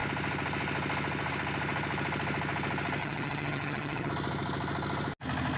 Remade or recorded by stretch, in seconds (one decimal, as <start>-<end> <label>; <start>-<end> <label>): 0.0-3.0 recorded; 3.0-4.1 remade; 4.1-5.6 recorded

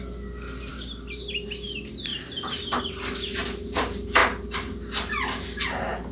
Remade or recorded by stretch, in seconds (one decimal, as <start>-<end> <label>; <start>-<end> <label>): 0.0-0.7 recorded; 0.7-1.3 remade; 1.3-2.1 recorded; 2.1-2.8 remade; 2.8-6.1 recorded

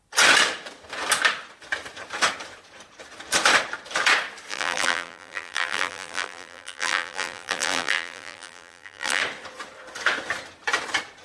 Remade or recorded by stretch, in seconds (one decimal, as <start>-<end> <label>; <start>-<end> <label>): 0.0-4.5 recorded; 4.5-9.2 remade; 9.2-11.2 recorded